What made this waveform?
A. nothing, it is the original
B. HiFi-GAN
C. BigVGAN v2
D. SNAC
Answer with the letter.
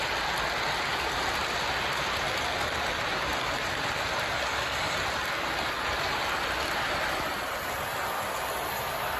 A